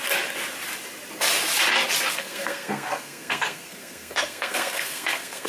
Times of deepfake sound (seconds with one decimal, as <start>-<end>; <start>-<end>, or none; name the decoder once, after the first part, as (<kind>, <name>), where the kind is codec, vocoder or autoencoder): 2.1-5.5 (codec, SNAC)